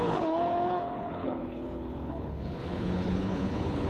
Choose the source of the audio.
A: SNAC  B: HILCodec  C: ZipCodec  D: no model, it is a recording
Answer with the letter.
B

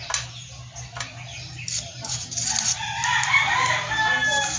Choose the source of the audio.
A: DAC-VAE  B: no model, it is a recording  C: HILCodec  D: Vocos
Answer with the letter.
B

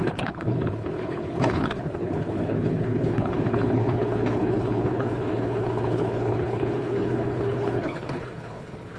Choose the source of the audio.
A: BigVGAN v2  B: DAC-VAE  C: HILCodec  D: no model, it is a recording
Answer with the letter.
C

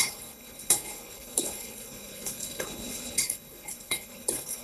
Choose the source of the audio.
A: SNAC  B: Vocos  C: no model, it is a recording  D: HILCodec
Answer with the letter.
D